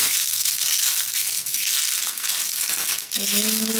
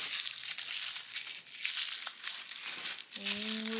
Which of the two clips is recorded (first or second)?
second